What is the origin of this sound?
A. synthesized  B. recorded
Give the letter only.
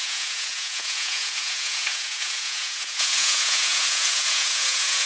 A